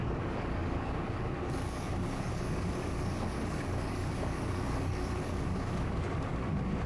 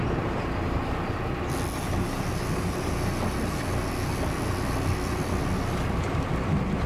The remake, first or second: first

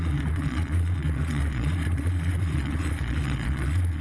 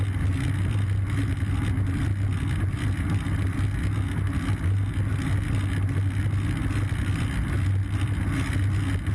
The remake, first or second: first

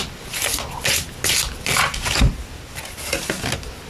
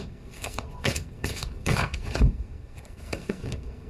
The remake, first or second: second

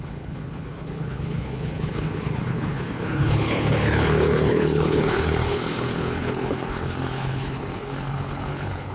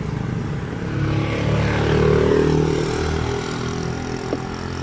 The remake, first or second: first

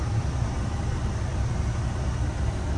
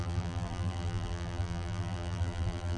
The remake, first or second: second